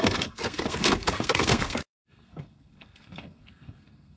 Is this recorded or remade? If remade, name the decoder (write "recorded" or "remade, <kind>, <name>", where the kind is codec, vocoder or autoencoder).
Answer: remade, codec, SNAC